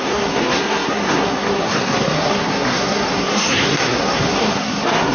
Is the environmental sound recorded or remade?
remade